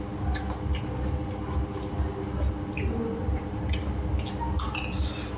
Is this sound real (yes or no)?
yes